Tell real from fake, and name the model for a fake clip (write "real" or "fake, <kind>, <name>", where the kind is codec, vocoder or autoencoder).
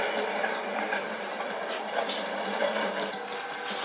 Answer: real